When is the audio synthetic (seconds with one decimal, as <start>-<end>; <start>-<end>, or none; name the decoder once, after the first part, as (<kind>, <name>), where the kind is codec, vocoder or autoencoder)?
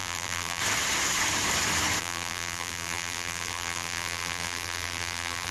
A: 0.0-0.6 (vocoder, BigVGAN v2); 2.0-5.5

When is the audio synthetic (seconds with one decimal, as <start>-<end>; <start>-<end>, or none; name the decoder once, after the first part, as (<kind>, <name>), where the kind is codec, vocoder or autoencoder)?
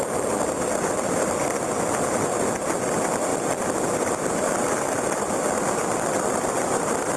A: none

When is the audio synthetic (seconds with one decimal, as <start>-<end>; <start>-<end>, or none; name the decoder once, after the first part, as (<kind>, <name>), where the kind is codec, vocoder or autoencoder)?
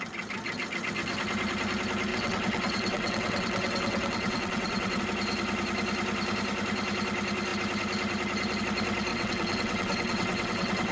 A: 2.1-5.0 (vocoder, WaveNeXt); 9.1-10.9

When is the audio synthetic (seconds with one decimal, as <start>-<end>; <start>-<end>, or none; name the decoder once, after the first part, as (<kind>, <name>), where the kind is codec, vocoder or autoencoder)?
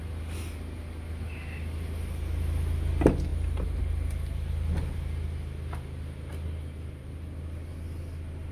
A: 3.3-3.8 (vocoder, BigVGAN v2)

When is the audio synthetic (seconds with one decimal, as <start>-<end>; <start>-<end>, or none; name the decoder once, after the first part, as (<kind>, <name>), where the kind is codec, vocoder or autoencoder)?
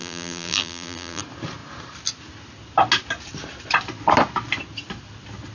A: 0.0-1.2 (vocoder, BigVGAN v2)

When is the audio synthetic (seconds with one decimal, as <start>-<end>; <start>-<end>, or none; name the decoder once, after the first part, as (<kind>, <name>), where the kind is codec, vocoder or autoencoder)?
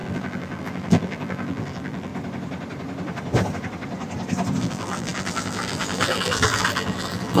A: 0.0-2.1 (vocoder, BigVGAN v2); 4.6-7.4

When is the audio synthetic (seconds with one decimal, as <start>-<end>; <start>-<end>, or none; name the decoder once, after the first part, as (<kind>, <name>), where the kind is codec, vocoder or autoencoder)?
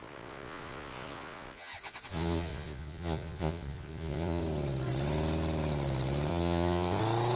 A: 0.0-4.4 (vocoder, Vocos); 6.3-7.0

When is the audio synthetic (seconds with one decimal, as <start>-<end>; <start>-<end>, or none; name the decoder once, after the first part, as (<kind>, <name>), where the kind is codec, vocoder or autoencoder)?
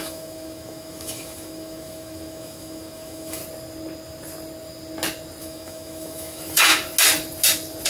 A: 0.0-3.4 (autoencoder, DAC-VAE); 5.4-6.7